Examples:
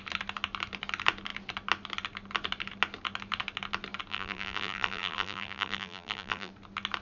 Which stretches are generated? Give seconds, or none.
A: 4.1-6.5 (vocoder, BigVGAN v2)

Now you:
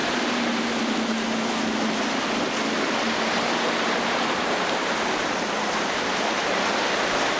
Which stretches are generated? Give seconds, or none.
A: 0.0-1.1 (vocoder, BigVGAN v2)

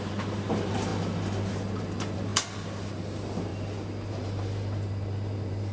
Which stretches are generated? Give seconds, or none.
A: 0.0-0.9 (vocoder, BigVGAN v2); 1.5-2.3; 3.0-3.5; 4.1-5.7

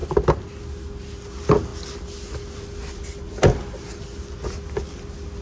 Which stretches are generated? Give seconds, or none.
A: none

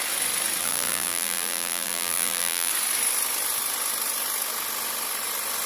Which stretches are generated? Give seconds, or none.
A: 0.6-2.7 (vocoder, BigVGAN v2)